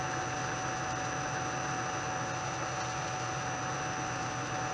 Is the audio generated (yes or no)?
no